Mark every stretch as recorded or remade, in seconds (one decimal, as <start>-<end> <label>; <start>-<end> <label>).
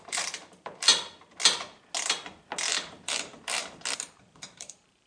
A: 0.0-0.9 remade; 0.9-2.7 recorded; 2.7-3.6 remade; 3.6-4.1 recorded; 4.1-5.1 remade